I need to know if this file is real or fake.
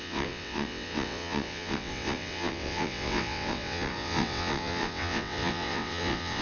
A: fake